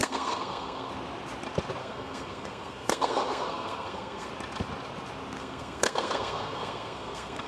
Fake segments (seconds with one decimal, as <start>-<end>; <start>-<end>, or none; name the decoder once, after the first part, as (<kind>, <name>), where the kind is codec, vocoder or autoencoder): 0.0-0.9 (codec, SNAC); 1.8-4.3; 5.4-7.5